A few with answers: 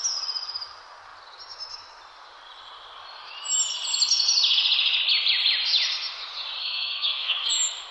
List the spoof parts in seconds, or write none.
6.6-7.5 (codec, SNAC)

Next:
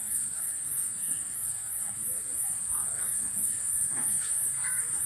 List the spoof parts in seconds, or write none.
0.0-5.1 (codec, SNAC)

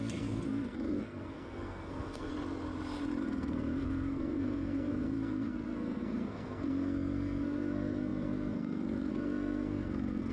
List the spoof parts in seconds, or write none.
0.0-2.3 (codec, SNAC); 3.2-10.3